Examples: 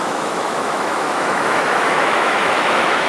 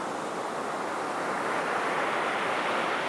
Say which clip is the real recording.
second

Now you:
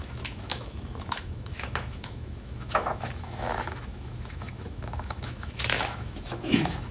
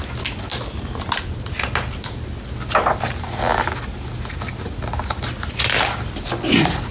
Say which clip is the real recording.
second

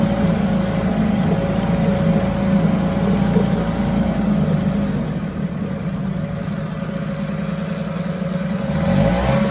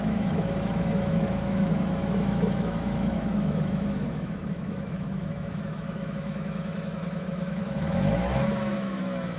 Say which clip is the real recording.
first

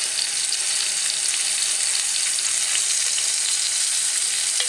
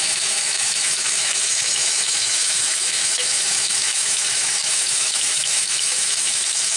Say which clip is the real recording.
first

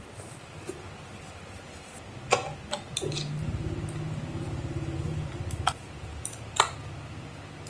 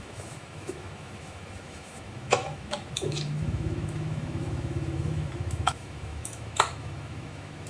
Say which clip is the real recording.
first